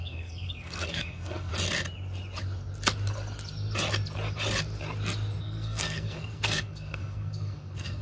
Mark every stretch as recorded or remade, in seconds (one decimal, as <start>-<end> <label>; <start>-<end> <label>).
0.0-1.5 remade; 1.5-5.4 recorded; 5.4-8.0 remade